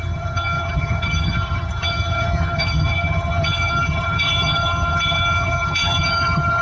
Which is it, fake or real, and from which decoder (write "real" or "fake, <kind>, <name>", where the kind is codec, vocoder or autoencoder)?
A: fake, vocoder, HiFi-GAN